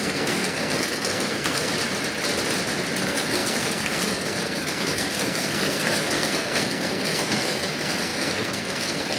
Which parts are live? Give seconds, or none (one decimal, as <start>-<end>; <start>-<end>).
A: 1.7-3.0